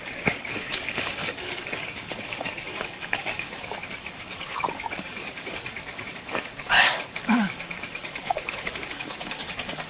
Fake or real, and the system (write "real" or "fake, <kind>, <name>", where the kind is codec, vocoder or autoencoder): fake, codec, DAC